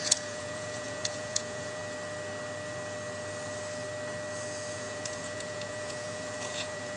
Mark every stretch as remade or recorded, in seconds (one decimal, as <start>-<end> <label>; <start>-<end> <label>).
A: 0.0-1.8 remade; 1.8-4.7 recorded; 4.7-7.0 remade